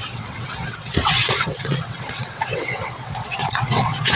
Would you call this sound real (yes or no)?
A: no